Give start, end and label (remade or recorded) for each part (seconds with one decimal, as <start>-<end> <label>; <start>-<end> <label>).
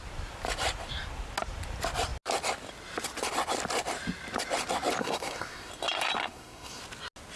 0.0-5.0 recorded; 5.0-5.7 remade; 5.7-6.2 recorded; 6.2-6.8 remade; 6.8-7.4 recorded